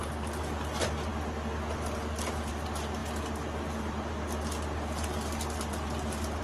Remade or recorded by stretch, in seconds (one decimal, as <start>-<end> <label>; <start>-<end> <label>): 0.0-6.4 recorded